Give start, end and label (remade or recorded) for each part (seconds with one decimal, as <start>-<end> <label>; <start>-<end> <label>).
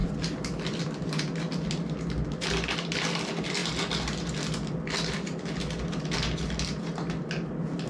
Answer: 0.0-7.9 recorded